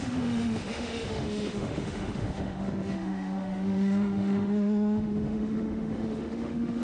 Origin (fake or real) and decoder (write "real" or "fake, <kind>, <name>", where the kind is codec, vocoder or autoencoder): fake, autoencoder, DAC-VAE